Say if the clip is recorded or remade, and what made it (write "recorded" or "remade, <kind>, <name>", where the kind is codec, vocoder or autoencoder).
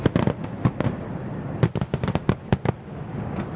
recorded